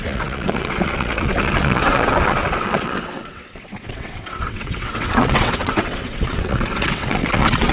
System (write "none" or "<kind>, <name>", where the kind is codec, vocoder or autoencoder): vocoder, WaveNeXt